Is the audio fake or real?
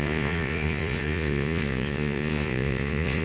fake